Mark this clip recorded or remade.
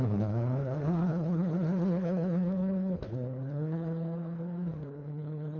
remade